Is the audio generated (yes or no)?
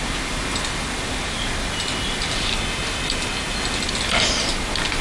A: no